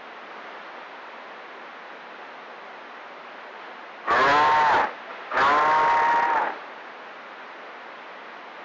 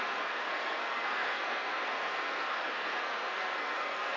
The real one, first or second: first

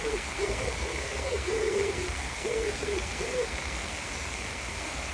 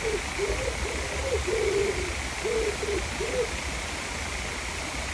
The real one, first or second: second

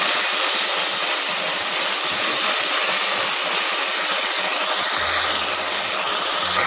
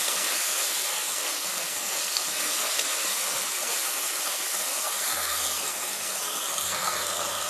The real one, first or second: first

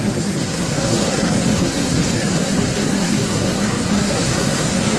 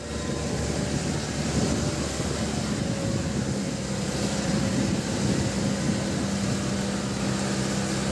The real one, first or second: second